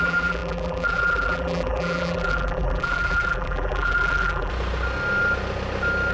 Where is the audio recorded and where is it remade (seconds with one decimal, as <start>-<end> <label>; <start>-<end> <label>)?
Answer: 0.0-4.5 remade; 4.5-6.1 recorded